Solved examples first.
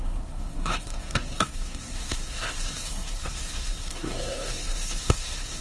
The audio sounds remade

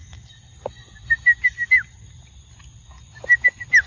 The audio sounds recorded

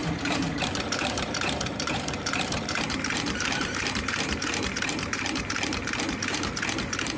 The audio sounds remade